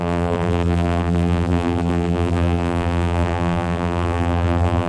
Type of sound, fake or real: fake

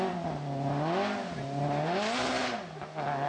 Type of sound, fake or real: real